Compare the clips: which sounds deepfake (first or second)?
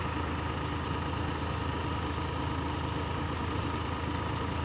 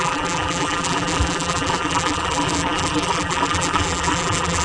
second